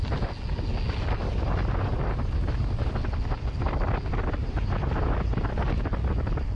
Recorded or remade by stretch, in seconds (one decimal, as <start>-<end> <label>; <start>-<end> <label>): 0.0-1.2 recorded; 1.2-2.9 remade; 2.9-4.4 recorded; 4.4-5.5 remade; 5.5-6.6 recorded